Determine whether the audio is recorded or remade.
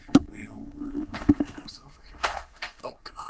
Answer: remade